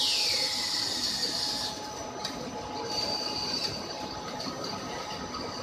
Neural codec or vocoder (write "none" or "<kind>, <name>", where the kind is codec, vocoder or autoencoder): none